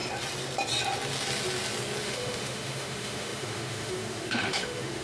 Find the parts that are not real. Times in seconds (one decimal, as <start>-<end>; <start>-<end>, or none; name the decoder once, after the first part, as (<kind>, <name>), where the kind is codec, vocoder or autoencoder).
2.0-5.0 (autoencoder, DAC-VAE)